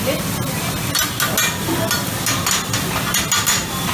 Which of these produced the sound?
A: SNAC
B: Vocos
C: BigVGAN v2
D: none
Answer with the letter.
D